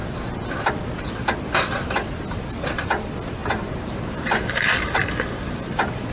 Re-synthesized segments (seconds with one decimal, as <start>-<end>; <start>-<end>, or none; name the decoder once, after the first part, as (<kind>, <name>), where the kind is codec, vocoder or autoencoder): 0.7-3.4 (vocoder, BigVGAN v2); 4.0-6.1